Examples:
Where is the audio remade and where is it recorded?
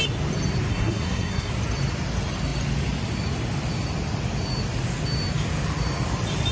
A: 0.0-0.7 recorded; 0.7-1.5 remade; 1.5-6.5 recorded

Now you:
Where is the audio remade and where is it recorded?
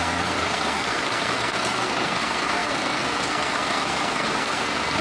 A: 0.0-5.0 remade